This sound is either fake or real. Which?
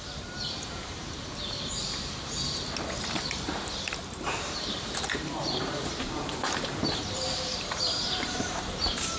fake